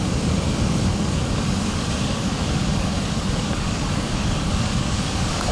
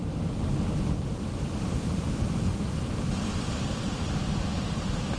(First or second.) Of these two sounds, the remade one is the first